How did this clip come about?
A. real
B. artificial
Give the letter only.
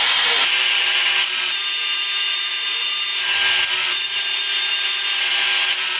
B